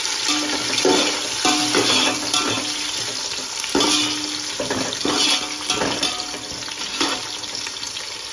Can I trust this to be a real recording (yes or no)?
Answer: yes